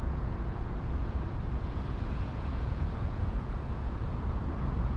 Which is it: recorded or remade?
remade